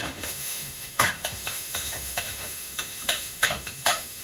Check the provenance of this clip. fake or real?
fake